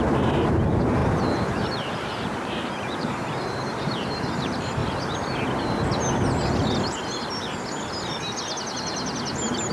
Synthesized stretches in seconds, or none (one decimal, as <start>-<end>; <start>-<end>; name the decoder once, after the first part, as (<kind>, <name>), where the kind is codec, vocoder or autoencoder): 0.0-1.0 (vocoder, BigVGAN v2); 2.1-4.8